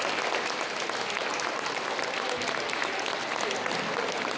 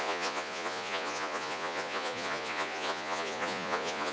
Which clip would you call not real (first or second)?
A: second